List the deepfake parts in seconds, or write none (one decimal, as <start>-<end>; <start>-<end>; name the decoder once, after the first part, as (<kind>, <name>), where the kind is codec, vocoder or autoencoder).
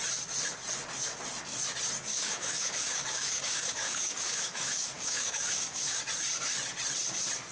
2.1-6.0 (codec, DAC)